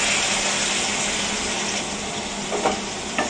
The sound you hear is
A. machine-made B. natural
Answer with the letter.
B